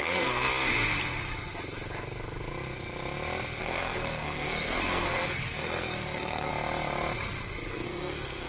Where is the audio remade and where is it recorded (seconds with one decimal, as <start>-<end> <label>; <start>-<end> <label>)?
0.0-0.5 remade; 0.5-3.6 recorded; 3.6-6.5 remade; 6.5-7.7 recorded; 7.7-8.5 remade